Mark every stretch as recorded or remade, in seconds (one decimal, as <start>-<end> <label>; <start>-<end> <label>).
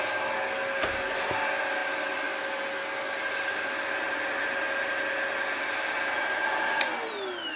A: 0.0-7.5 recorded